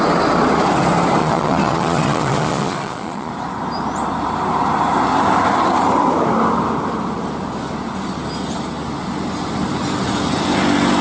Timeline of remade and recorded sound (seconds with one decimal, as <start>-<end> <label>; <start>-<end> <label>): 0.0-1.2 recorded; 1.2-3.3 remade; 3.3-11.0 recorded